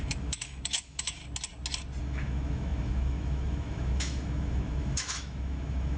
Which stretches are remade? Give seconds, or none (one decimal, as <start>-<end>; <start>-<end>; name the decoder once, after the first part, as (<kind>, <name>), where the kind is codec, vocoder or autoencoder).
0.0-1.2 (autoencoder, DAC-VAE); 2.0-6.0